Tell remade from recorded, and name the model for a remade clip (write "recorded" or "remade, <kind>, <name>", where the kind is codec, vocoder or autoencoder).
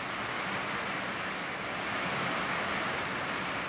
recorded